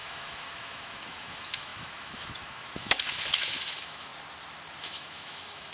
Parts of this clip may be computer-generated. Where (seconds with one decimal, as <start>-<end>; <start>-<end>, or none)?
0.0-4.1; 4.8-5.7